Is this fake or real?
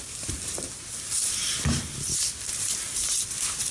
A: real